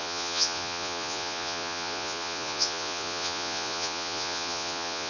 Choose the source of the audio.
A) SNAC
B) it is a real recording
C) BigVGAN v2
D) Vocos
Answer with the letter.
D